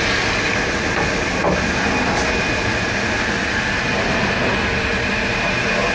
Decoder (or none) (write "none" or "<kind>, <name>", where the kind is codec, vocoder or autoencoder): none